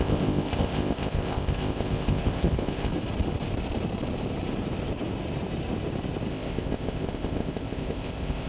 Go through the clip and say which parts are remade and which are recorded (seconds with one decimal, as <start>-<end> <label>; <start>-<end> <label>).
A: 0.0-2.9 remade; 2.9-6.3 recorded; 6.3-8.5 remade